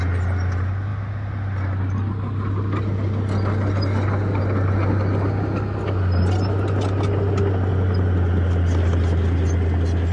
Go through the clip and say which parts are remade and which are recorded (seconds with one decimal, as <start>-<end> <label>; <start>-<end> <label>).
0.0-10.1 recorded